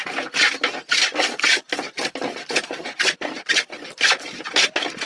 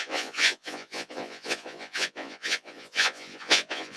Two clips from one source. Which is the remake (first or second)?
second